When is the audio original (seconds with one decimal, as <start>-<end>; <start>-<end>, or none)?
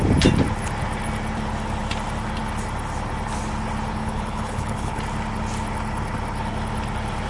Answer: 0.0-4.0; 5.0-7.3